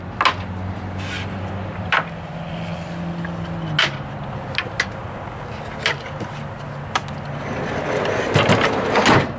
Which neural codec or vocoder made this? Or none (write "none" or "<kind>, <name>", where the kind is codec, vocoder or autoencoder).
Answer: none